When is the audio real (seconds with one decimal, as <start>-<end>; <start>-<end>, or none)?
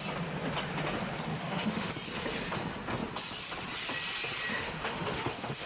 0.0-1.3; 1.9-4.5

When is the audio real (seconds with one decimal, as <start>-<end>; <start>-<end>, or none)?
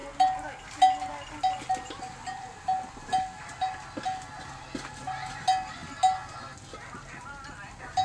0.0-8.0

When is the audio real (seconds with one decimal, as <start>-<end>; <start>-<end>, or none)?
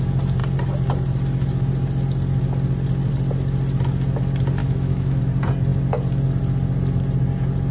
0.0-4.6; 5.2-7.7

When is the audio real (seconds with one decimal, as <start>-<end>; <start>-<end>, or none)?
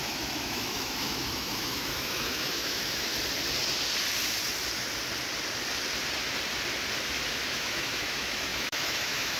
3.1-7.5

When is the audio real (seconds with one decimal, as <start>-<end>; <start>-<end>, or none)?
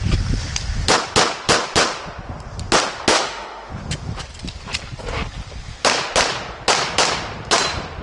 0.0-3.1; 3.7-8.0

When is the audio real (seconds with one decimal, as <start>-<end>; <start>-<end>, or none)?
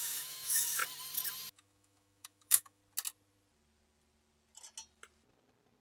0.8-1.5; 2.8-5.8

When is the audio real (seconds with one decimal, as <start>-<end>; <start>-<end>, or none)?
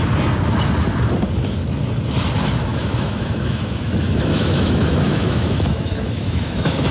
0.0-2.7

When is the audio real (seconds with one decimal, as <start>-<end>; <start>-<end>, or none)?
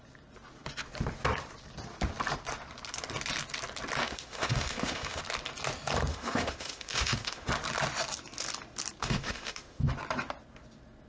0.0-4.0; 5.2-6.1; 7.5-9.0; 9.9-11.1